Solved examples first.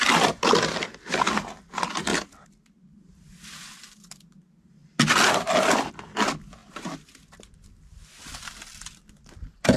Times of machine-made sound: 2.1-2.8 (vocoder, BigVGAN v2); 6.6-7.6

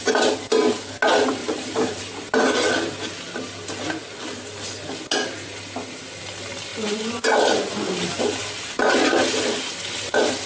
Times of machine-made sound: 1.4-2.0 (vocoder, BigVGAN v2)

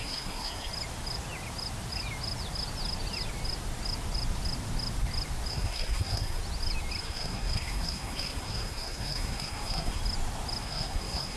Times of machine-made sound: 0.0-0.7 (codec, SNAC); 5.5-6.4; 7.0-10.0; 10.6-11.4

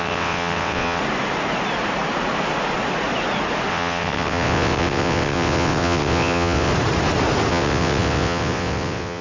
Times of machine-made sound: 0.0-1.0 (vocoder, WaveNeXt); 3.7-6.7; 7.5-9.2